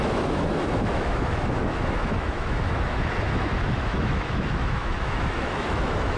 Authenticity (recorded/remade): remade